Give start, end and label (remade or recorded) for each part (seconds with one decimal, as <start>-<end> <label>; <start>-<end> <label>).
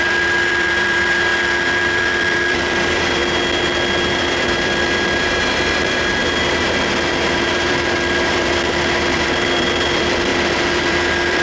0.0-1.3 remade; 1.3-1.8 recorded; 1.8-3.2 remade; 3.2-4.1 recorded; 4.1-10.3 remade; 10.3-10.9 recorded; 10.9-11.4 remade